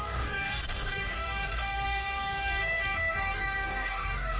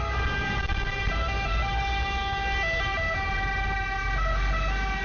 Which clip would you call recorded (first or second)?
second